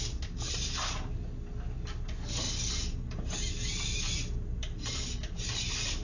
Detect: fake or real real